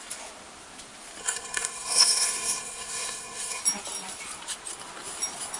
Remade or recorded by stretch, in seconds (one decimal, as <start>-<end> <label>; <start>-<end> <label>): 0.0-1.2 recorded; 1.2-3.6 remade; 3.6-5.6 recorded